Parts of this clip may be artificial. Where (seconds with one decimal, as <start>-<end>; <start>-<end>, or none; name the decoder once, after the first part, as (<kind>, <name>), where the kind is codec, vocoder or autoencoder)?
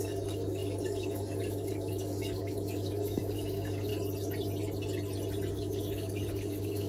0.0-3.9 (codec, DAC); 5.5-6.9